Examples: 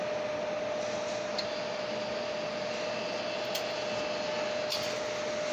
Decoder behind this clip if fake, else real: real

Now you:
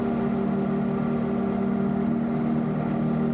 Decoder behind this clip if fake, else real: real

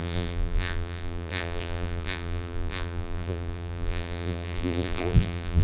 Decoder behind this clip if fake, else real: fake, vocoder, BigVGAN v2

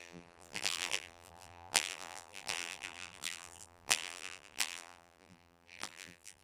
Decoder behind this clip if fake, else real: fake, vocoder, BigVGAN v2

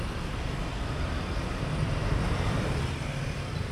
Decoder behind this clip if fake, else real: fake, vocoder, BigVGAN v2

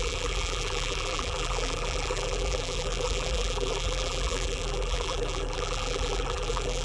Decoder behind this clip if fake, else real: fake, vocoder, BigVGAN v2